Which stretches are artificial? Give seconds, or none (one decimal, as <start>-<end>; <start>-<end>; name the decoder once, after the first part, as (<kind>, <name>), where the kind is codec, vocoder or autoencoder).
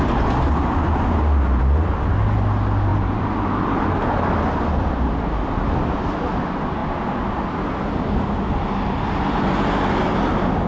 none